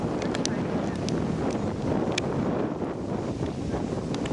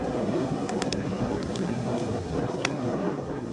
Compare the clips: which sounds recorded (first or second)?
first